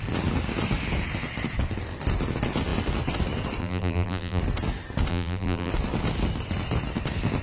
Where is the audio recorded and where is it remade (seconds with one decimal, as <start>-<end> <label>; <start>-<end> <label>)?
0.0-3.6 recorded; 3.6-4.4 remade; 4.4-5.1 recorded; 5.1-5.7 remade; 5.7-7.4 recorded